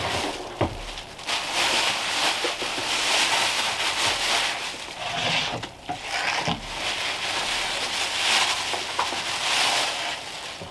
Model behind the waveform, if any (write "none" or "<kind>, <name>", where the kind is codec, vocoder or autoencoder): none